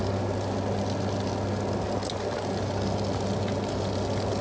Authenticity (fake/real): real